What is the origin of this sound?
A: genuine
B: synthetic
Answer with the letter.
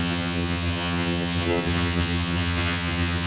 B